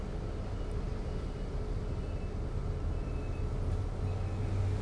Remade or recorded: recorded